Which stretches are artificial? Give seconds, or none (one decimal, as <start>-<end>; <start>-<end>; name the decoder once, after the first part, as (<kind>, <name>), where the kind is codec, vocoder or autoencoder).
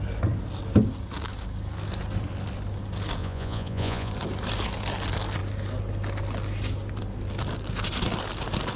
3.2-4.1 (vocoder, Vocos)